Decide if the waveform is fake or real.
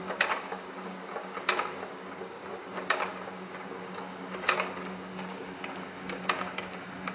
fake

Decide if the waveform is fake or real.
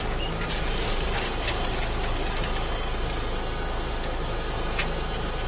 real